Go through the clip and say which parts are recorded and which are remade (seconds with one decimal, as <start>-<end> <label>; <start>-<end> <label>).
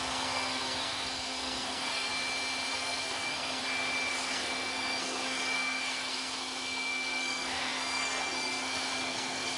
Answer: 0.0-2.1 remade; 2.1-2.7 recorded; 2.7-3.6 remade; 3.6-4.1 recorded; 4.1-9.6 remade